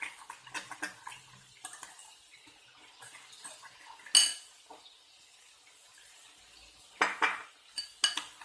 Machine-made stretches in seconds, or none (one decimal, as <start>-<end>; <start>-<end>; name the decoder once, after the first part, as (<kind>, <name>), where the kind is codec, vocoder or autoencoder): none